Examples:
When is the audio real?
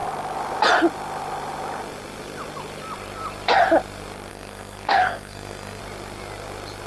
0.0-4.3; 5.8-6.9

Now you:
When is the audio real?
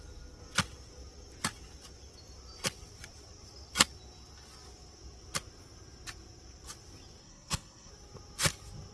0.0-7.2; 7.9-8.9